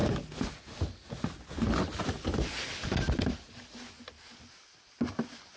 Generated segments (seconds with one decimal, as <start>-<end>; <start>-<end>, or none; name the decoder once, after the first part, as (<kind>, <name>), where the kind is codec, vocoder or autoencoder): none